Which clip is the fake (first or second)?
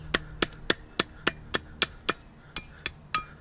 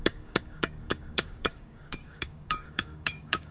second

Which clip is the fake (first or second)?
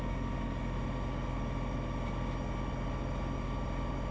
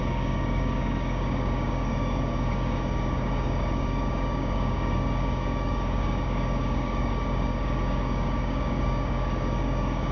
second